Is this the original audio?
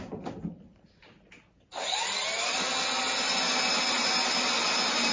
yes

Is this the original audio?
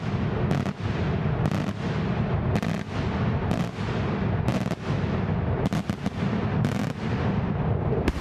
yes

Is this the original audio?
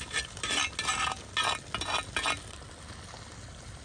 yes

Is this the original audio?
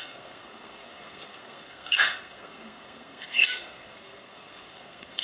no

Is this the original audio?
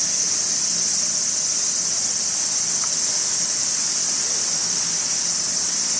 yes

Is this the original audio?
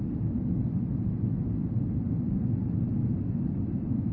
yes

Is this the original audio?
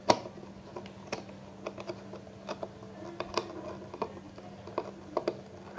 yes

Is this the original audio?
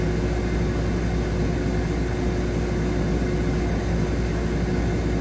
yes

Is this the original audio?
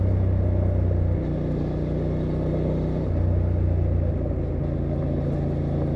yes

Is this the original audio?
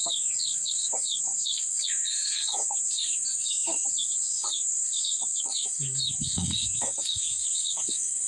no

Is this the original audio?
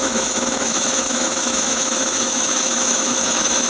no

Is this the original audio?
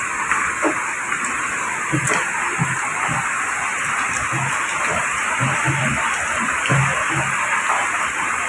yes